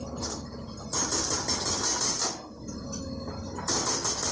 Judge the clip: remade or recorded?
recorded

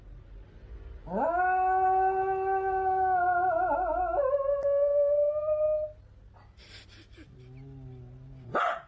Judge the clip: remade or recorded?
recorded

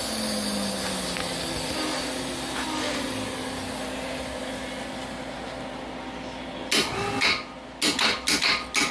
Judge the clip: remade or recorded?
recorded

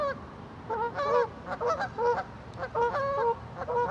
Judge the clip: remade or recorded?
recorded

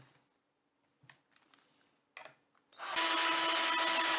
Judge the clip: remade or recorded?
recorded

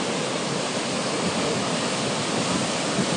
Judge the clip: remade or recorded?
recorded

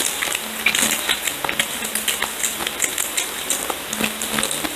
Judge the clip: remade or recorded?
recorded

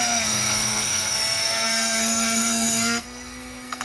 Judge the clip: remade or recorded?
remade